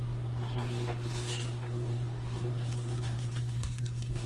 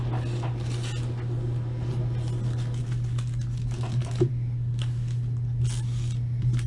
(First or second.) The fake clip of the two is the first